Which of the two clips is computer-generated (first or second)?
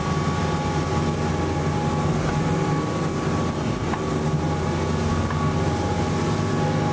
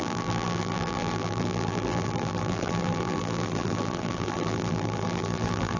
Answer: second